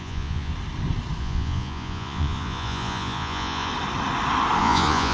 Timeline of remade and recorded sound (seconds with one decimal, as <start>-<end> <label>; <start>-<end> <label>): 0.0-0.5 remade; 0.5-1.2 recorded; 1.2-3.7 remade; 3.7-4.6 recorded; 4.6-5.1 remade